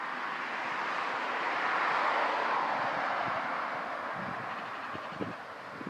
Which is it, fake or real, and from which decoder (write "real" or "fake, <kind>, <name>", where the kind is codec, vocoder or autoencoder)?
real